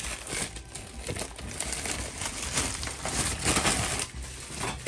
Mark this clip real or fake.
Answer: real